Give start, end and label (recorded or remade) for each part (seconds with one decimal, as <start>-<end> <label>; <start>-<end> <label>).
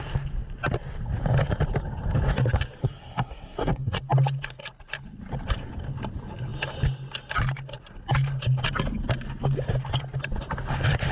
0.0-2.8 recorded; 2.8-4.0 remade; 4.0-11.1 recorded